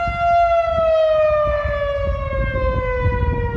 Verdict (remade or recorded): recorded